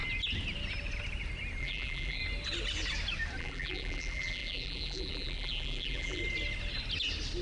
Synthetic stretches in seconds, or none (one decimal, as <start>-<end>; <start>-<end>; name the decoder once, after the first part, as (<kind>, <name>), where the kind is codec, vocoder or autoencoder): 1.6-2.2 (vocoder, BigVGAN v2); 3.4-6.2